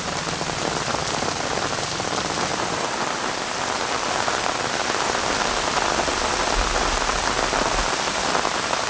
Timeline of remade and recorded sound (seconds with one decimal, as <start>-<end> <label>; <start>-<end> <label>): 0.0-8.9 recorded

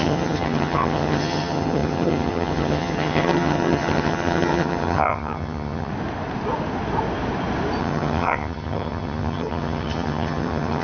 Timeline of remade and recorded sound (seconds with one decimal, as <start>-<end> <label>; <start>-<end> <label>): 0.0-5.9 remade; 5.9-7.8 recorded; 7.8-10.8 remade

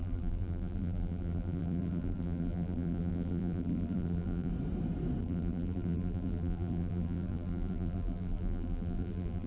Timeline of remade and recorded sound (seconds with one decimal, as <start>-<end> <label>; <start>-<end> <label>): 0.0-4.5 remade; 4.5-5.2 recorded; 5.2-9.5 remade

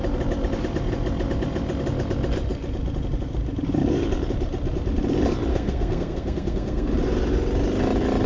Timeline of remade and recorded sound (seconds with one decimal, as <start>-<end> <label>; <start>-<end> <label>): 0.0-5.5 recorded; 5.5-6.9 remade; 6.9-8.3 recorded

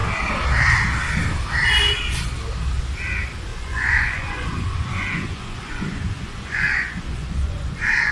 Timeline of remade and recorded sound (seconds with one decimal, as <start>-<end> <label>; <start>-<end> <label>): 0.0-3.5 recorded; 3.5-8.1 remade

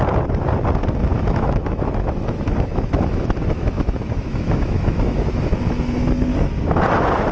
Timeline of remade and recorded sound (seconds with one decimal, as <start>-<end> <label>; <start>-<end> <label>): 0.0-1.1 recorded; 1.1-5.5 remade; 5.5-6.3 recorded; 6.3-6.8 remade; 6.8-7.3 recorded

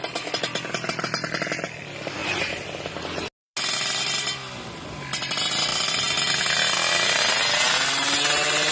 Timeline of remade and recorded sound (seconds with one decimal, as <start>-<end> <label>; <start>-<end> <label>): 0.0-8.7 recorded